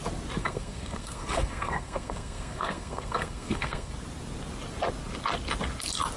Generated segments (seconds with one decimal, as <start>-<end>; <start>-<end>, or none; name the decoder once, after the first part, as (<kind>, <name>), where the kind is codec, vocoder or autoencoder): 0.4-3.9 (codec, SNAC)